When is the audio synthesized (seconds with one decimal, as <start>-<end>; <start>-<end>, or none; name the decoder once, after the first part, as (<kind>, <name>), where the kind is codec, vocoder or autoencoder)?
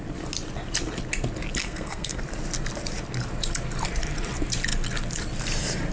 1.6-2.2 (codec, SNAC)